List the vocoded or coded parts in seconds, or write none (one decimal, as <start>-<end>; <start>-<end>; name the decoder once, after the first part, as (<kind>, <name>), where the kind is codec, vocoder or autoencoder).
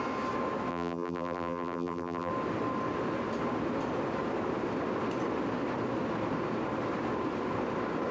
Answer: 0.7-2.3 (vocoder, BigVGAN v2)